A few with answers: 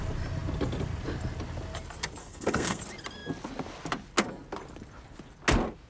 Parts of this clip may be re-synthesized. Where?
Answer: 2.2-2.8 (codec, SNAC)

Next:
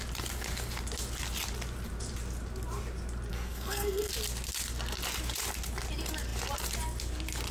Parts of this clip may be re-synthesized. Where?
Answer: 3.3-4.1 (codec, SNAC)

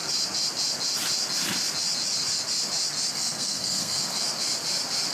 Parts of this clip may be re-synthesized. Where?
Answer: 3.1-4.1 (codec, SNAC)

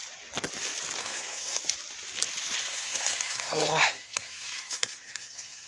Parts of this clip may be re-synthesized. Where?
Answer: 1.0-1.6 (codec, SNAC); 2.6-5.7

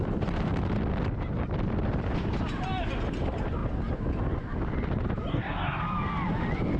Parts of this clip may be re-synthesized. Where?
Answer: 5.3-5.8 (codec, SNAC)

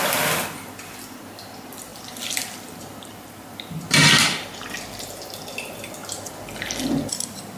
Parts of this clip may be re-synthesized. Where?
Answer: none